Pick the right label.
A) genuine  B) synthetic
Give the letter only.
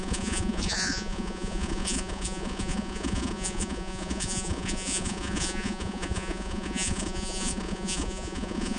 B